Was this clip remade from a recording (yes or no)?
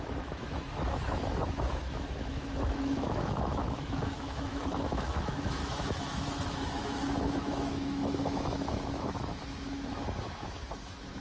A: yes